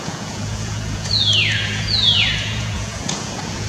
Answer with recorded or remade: remade